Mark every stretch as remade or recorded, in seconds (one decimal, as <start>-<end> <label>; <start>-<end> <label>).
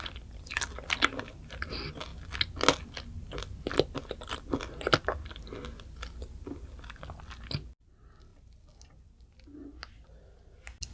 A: 0.0-10.9 recorded